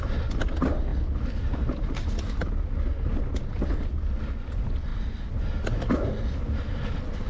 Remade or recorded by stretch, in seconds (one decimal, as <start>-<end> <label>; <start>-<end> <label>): 0.0-7.3 recorded